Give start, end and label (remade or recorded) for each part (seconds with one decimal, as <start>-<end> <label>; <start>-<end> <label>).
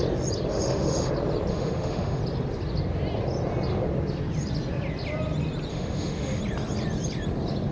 0.0-0.5 recorded; 0.5-1.1 remade; 1.1-1.5 recorded; 1.5-2.2 remade; 2.2-5.7 recorded; 5.7-6.4 remade; 6.4-7.7 recorded